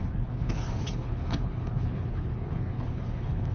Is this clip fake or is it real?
fake